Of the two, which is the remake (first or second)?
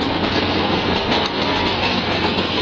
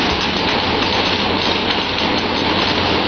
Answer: first